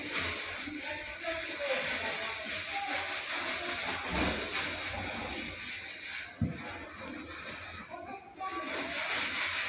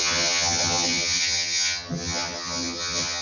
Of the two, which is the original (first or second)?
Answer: first